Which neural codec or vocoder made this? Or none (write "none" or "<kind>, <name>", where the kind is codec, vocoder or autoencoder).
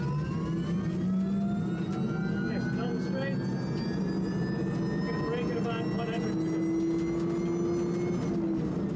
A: none